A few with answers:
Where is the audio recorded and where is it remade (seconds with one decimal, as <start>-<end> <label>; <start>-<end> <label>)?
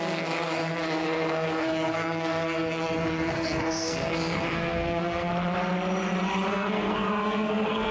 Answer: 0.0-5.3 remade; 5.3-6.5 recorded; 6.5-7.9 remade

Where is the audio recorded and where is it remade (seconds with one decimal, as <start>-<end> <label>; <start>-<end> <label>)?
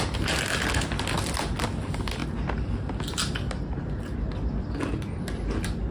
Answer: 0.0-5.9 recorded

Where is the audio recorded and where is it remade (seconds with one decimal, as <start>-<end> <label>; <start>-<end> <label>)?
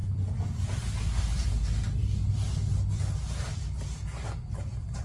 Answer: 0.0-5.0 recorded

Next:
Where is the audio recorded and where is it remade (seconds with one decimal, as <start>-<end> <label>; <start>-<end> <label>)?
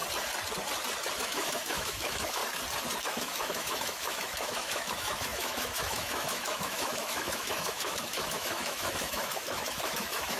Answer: 0.0-1.2 recorded; 1.2-2.4 remade; 2.4-3.0 recorded; 3.0-10.4 remade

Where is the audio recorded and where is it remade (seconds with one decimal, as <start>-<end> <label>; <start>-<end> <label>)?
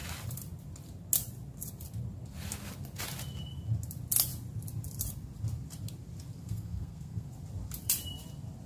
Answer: 0.0-6.4 recorded; 6.4-7.3 remade; 7.3-8.7 recorded